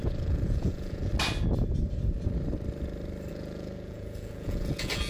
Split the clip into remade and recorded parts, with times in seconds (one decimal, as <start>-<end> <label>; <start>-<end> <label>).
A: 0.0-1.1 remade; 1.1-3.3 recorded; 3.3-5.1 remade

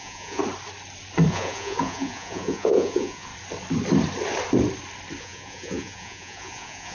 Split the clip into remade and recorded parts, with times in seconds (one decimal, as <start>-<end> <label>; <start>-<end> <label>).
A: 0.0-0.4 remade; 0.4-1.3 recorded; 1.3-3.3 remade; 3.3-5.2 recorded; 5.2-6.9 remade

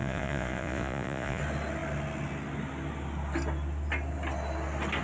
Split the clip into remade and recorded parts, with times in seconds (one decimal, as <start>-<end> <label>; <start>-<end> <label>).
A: 0.0-1.4 remade; 1.4-5.0 recorded

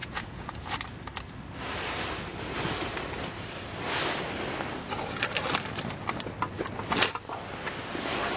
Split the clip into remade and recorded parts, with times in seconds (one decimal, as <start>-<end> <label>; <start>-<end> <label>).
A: 0.0-0.8 remade; 0.8-8.4 recorded

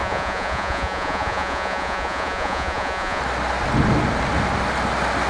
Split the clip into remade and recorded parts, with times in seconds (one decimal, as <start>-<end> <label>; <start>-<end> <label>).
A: 0.0-3.2 remade; 3.2-5.3 recorded

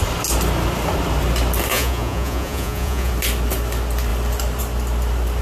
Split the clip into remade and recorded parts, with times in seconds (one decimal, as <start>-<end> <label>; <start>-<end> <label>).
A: 0.0-1.7 recorded; 1.7-3.1 remade; 3.1-5.4 recorded